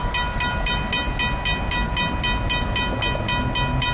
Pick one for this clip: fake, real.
real